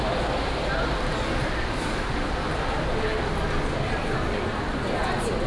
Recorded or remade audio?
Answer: recorded